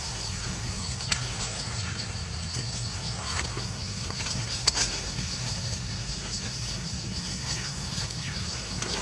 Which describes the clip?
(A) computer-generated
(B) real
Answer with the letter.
A